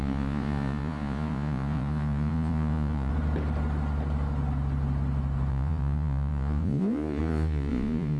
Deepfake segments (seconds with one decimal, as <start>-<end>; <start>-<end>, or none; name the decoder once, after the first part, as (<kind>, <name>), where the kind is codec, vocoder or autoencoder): 0.0-3.1 (vocoder, Vocos); 5.5-8.2